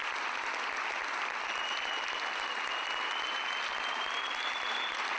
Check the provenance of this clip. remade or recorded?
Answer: recorded